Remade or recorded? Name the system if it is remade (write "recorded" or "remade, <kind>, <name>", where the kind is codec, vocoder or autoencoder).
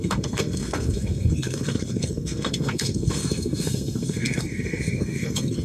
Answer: remade, codec, SNAC